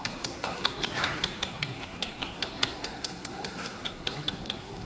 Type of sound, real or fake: fake